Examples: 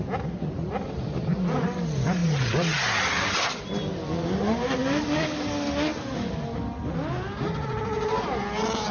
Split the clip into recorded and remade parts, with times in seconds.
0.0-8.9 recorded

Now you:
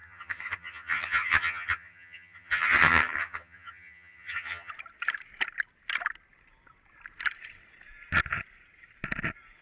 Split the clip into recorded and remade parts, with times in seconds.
0.0-4.7 remade; 4.7-9.6 recorded

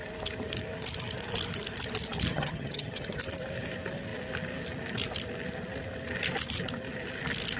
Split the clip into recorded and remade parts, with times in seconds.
0.0-2.3 recorded; 2.3-3.2 remade; 3.2-7.6 recorded